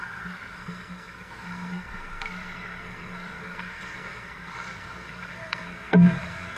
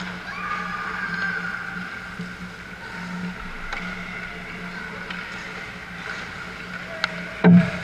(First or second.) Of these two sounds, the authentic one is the second